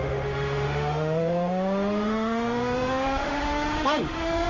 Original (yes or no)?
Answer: no